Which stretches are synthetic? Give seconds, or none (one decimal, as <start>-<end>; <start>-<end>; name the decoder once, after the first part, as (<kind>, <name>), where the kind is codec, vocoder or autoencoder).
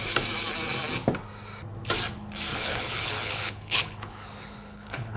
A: 2.5-5.2 (codec, HILCodec)